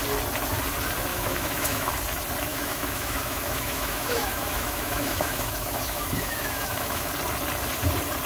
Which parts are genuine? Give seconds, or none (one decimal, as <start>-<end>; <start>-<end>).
0.0-1.1; 1.9-2.5; 7.1-8.3

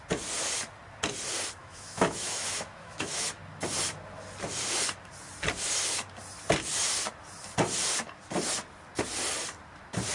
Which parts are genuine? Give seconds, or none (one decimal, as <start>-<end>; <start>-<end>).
0.0-1.6; 3.3-10.1

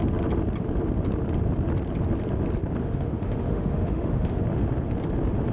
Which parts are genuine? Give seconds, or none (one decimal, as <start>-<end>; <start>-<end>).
0.0-2.8; 4.4-5.5

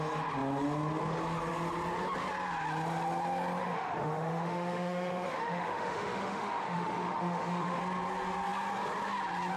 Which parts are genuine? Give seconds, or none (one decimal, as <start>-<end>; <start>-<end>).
0.0-3.6; 7.8-9.6